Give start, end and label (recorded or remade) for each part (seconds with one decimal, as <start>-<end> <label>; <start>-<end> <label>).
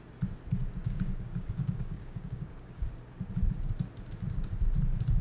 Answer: 0.0-0.6 recorded; 0.6-3.3 remade; 3.3-5.2 recorded